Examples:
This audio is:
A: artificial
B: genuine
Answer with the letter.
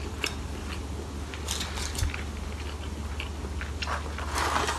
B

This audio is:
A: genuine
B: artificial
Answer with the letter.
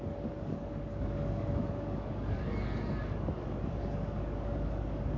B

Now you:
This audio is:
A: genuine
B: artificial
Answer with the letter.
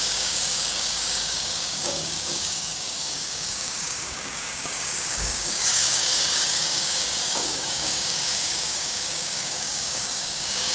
B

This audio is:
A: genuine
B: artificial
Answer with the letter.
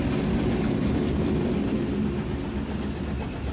A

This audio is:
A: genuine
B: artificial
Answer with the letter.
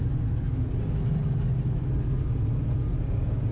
A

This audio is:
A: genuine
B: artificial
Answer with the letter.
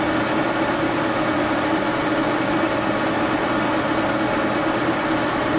A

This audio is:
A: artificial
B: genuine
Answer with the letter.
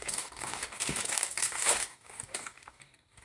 A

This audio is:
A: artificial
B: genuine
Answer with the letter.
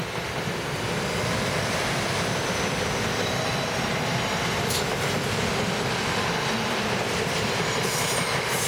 B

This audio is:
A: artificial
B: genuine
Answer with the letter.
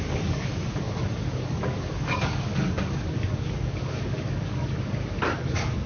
A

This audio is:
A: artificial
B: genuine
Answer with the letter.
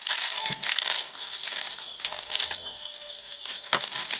A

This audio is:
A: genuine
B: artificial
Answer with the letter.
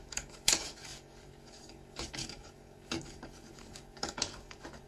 B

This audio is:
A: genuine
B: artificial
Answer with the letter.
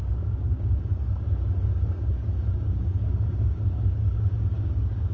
B